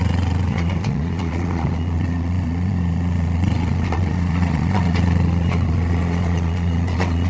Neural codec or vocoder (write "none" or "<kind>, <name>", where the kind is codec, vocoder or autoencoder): vocoder, Vocos